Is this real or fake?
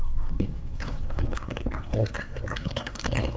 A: fake